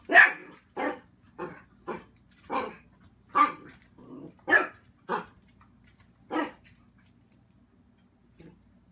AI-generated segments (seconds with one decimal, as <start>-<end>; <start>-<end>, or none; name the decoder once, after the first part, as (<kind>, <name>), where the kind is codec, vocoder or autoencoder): none